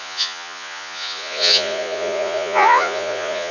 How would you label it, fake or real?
fake